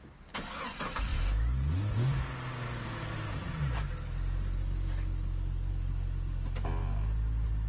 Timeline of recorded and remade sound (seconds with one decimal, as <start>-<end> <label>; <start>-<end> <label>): 0.0-7.7 recorded